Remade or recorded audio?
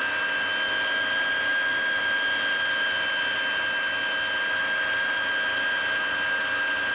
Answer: recorded